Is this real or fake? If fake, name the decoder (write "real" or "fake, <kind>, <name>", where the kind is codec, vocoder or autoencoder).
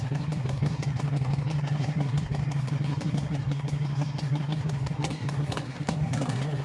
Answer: fake, codec, SNAC